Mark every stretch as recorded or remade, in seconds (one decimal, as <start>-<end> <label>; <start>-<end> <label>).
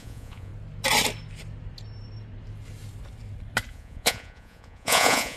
0.0-0.5 remade; 0.5-3.7 recorded; 3.7-5.4 remade